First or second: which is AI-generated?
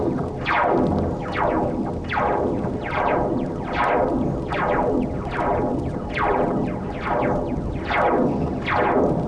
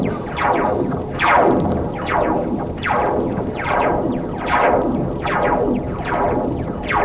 second